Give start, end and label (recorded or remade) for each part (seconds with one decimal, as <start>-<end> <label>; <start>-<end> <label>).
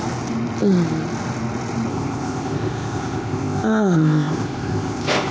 0.0-1.9 recorded; 1.9-5.3 remade